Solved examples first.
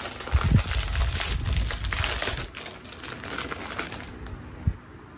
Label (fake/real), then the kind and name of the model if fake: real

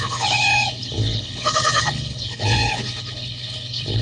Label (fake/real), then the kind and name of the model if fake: fake, codec, HILCodec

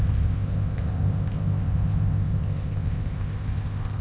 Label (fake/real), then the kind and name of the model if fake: fake, codec, ZipCodec